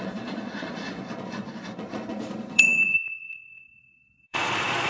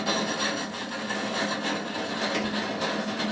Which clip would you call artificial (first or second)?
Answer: first